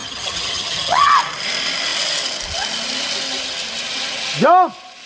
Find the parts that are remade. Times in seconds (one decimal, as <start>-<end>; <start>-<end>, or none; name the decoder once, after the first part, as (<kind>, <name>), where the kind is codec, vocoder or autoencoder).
0.0-1.1 (vocoder, HiFi-GAN)